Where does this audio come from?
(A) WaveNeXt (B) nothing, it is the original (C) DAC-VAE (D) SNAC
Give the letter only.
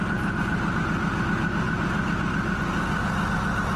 B